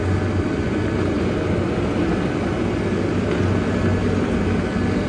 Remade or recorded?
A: recorded